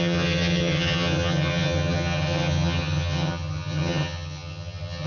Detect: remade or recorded remade